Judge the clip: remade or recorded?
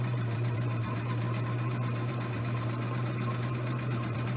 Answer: remade